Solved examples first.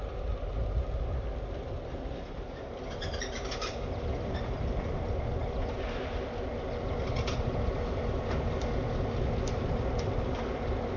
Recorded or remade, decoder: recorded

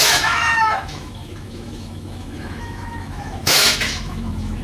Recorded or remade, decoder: remade, autoencoder, DAC-VAE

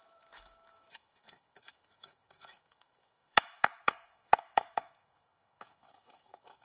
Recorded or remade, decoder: remade, autoencoder, DAC-VAE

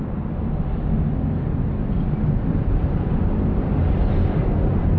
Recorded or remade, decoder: recorded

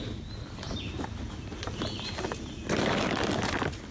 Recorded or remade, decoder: recorded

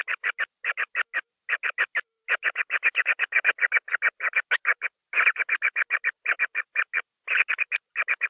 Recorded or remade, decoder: recorded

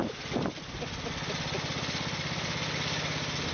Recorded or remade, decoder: recorded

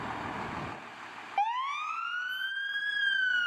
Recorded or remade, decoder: recorded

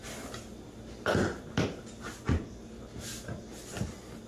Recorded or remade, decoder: recorded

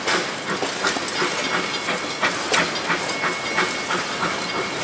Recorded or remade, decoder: recorded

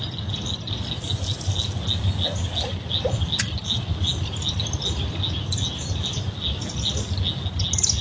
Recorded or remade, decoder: recorded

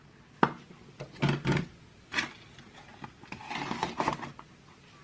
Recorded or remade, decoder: recorded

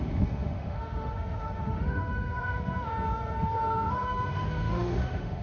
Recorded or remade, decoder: remade, autoencoder, DAC-VAE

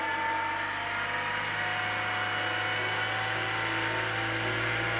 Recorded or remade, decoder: recorded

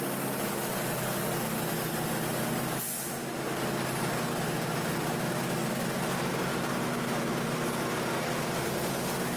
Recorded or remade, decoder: recorded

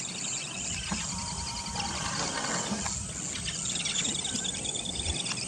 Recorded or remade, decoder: recorded